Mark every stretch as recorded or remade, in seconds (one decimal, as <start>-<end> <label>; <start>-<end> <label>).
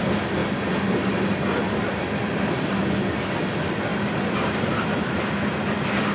0.0-0.4 recorded; 0.4-1.9 remade; 1.9-3.9 recorded; 3.9-4.7 remade; 4.7-6.1 recorded